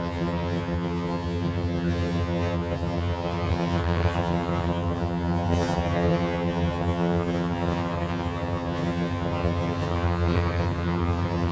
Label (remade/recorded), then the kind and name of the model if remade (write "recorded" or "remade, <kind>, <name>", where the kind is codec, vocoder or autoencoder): remade, vocoder, HiFi-GAN